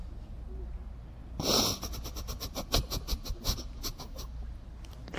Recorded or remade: recorded